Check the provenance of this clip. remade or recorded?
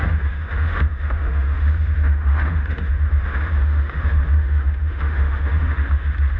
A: remade